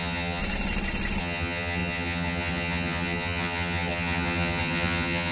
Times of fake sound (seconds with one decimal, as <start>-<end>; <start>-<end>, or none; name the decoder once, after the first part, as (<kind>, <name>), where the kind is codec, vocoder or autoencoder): 0.0-0.4 (vocoder, HiFi-GAN); 1.2-5.3